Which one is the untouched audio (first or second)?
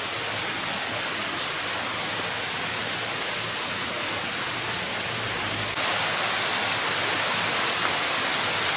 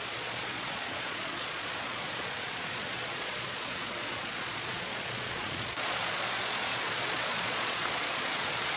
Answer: first